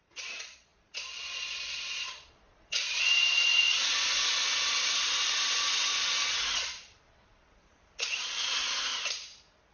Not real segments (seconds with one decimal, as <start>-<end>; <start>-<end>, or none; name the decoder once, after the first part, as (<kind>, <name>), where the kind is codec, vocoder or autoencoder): 0.0-8.9 (vocoder, Vocos)